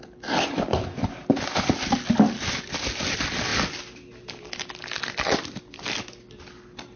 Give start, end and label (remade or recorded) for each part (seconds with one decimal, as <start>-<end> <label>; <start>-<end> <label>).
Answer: 0.0-7.0 recorded